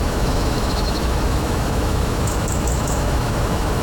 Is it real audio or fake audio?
fake